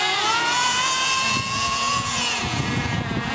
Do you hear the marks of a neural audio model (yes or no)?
yes